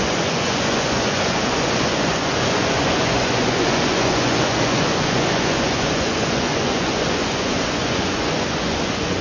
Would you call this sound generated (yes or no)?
yes